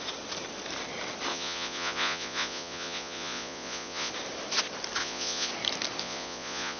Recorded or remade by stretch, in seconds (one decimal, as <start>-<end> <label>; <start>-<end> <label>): 0.0-1.3 recorded; 1.3-4.1 remade; 4.1-5.0 recorded; 5.0-5.5 remade; 5.5-6.0 recorded; 6.0-6.8 remade